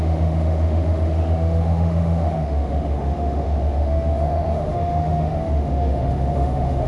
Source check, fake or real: fake